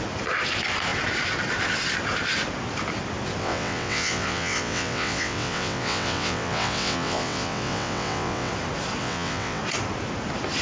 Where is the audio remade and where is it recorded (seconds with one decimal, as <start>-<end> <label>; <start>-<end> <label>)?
0.0-3.4 recorded; 3.4-8.5 remade; 8.5-9.0 recorded; 9.0-9.6 remade; 9.6-10.6 recorded